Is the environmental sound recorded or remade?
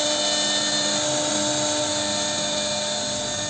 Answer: recorded